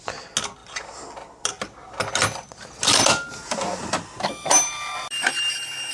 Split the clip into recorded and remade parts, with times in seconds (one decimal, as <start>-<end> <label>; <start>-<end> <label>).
0.0-5.9 recorded